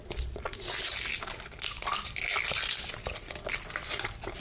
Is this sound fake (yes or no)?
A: no